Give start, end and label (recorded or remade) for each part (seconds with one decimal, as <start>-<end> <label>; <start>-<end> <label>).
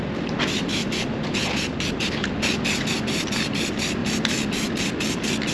0.0-0.7 recorded; 0.7-2.9 remade; 2.9-4.0 recorded; 4.0-5.5 remade